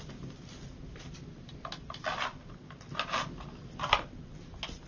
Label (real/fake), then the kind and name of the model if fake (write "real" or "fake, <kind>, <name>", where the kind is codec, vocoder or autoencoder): real